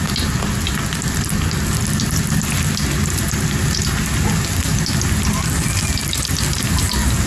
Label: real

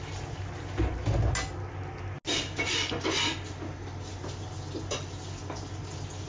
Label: real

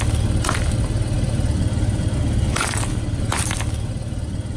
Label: real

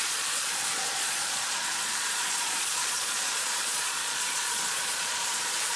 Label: fake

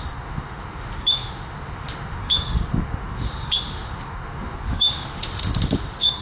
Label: fake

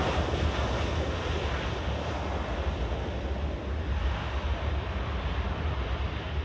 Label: real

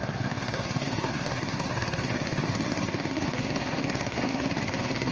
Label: fake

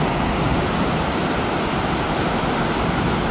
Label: real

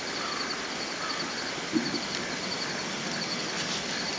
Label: real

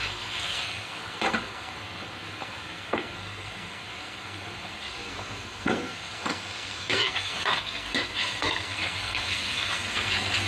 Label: fake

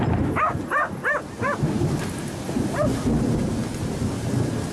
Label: real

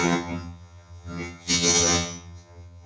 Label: fake